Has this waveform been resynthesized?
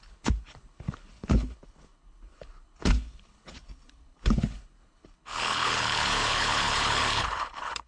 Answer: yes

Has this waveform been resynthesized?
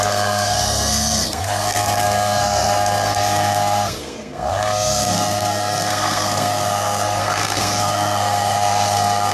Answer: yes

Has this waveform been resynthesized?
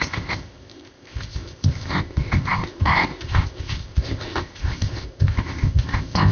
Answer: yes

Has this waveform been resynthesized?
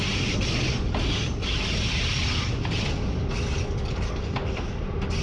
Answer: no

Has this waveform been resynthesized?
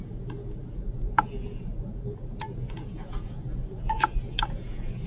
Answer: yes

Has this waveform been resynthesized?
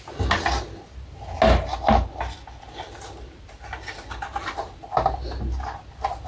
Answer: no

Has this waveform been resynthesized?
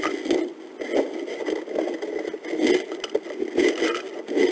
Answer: no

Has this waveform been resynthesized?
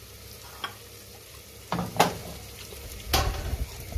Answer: no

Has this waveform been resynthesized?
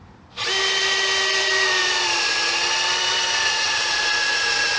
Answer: no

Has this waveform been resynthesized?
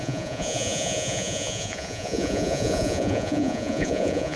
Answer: yes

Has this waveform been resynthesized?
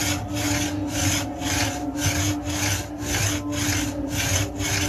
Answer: no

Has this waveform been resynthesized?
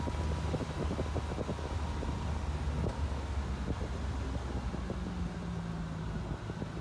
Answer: no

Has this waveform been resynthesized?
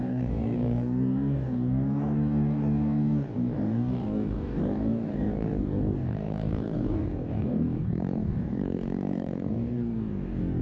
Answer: yes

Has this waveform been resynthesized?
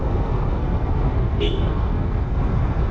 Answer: yes